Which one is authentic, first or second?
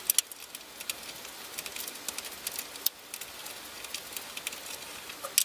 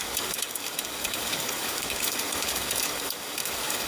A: first